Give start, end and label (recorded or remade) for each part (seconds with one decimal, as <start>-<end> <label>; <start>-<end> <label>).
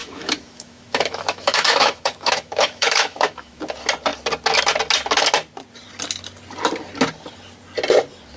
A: 0.0-3.6 remade; 3.6-8.4 recorded